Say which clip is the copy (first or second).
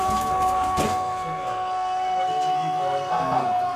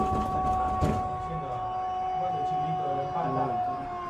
first